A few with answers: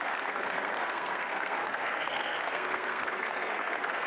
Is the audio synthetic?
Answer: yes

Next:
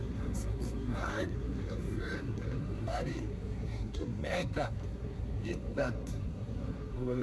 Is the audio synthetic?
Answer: yes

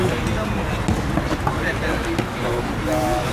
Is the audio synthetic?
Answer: no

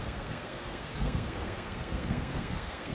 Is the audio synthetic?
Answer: yes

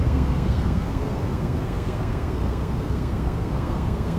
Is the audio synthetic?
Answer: yes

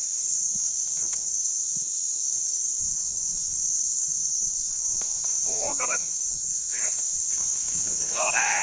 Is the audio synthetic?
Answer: yes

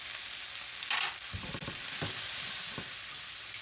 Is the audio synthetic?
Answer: no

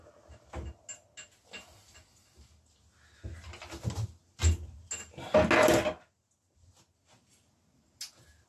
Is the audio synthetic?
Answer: no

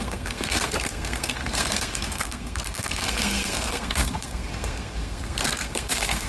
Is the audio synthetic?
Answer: yes